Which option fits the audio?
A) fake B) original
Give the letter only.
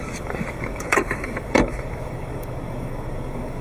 A